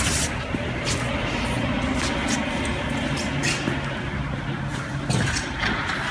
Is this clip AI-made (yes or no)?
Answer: no